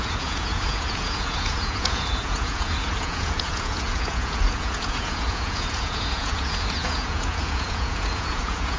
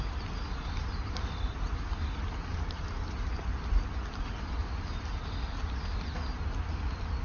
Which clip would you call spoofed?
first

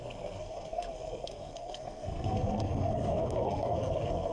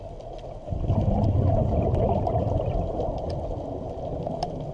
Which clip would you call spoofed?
first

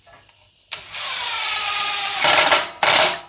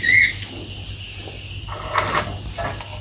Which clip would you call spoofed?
first